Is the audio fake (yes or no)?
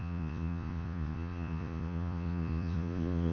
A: yes